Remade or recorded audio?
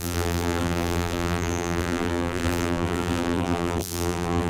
remade